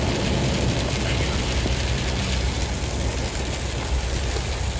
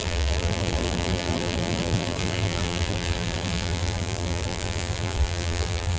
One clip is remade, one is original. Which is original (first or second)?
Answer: first